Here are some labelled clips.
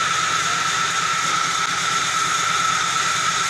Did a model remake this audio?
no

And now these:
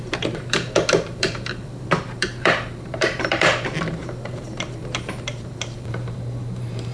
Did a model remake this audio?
yes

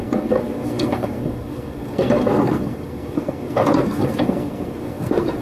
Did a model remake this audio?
yes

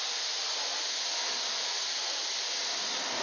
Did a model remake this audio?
no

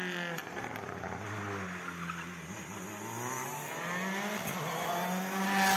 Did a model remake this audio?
no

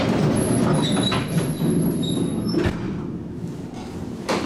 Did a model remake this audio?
no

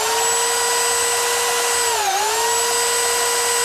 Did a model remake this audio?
no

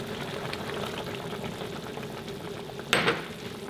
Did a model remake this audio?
no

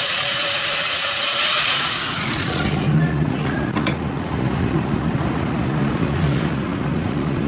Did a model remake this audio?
yes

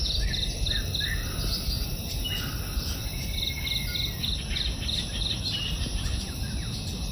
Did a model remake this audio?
no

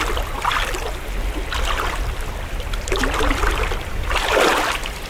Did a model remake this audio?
no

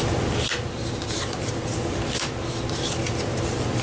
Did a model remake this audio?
no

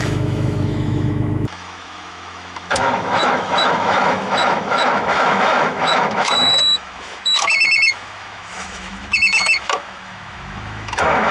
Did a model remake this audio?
yes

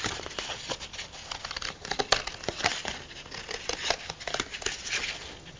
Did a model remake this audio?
no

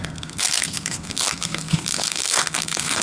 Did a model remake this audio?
yes